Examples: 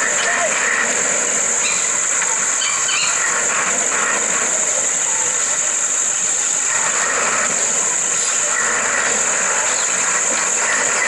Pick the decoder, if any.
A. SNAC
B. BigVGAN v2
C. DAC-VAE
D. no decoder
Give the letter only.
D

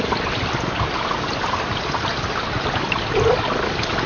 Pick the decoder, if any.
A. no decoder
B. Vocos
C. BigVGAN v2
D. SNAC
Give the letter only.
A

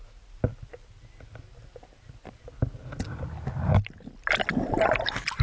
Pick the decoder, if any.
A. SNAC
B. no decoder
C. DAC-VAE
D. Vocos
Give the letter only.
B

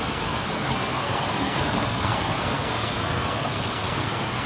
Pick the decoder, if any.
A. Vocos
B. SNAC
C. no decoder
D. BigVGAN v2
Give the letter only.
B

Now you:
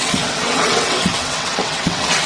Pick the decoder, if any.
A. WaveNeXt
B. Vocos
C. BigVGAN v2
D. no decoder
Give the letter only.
A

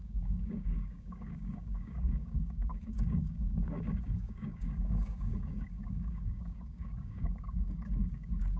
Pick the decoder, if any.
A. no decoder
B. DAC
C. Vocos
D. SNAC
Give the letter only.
B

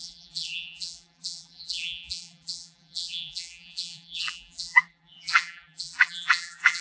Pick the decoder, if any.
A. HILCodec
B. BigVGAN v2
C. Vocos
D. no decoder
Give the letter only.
B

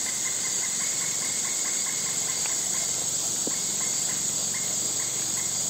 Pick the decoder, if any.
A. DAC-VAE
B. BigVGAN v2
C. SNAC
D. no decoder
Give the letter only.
D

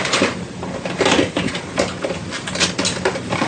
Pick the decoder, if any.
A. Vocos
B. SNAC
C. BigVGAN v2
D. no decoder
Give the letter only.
D